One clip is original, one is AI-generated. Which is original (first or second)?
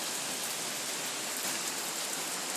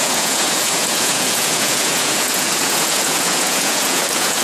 first